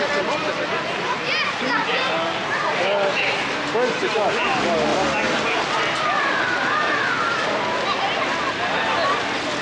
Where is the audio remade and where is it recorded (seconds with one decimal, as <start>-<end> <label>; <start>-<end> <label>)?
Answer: 0.0-9.6 recorded